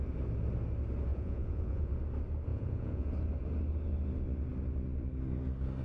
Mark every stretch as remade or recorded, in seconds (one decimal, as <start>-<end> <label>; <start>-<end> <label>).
0.0-1.1 recorded; 1.1-1.9 remade; 1.9-2.5 recorded; 2.5-3.1 remade; 3.1-5.8 recorded

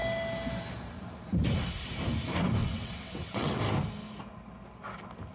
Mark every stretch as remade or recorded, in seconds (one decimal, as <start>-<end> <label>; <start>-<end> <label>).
0.0-2.6 recorded; 2.6-3.6 remade; 3.6-5.3 recorded

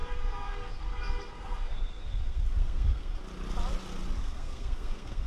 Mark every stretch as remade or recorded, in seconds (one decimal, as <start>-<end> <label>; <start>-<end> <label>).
0.0-3.2 remade; 3.2-4.2 recorded; 4.2-5.3 remade

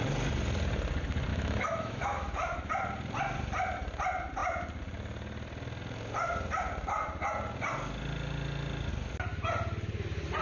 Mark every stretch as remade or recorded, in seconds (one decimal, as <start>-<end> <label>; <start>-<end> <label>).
0.0-1.3 recorded; 1.3-2.7 remade; 2.7-10.4 recorded

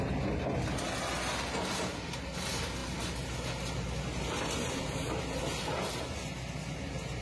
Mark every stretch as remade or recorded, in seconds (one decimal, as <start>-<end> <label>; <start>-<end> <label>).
0.0-7.2 recorded

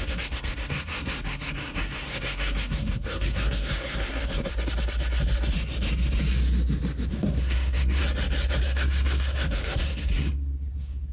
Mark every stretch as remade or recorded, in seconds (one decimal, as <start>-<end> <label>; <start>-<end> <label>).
0.0-4.5 remade; 4.5-7.1 recorded; 7.1-8.0 remade; 8.0-8.6 recorded; 8.6-11.1 remade

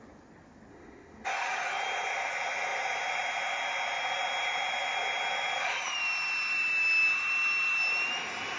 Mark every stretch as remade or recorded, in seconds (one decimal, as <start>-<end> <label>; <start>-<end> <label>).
0.0-0.7 recorded; 0.7-1.3 remade; 1.3-8.6 recorded

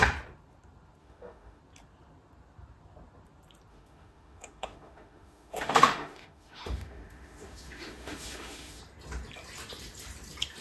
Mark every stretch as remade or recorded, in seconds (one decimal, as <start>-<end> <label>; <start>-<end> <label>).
0.0-1.0 recorded; 1.0-1.6 remade; 1.6-3.7 recorded; 3.7-8.8 remade; 8.8-10.6 recorded